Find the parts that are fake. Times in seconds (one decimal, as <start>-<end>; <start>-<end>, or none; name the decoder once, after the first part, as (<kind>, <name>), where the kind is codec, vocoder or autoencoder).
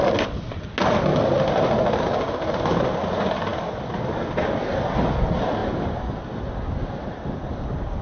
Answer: none